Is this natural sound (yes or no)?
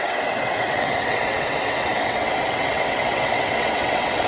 no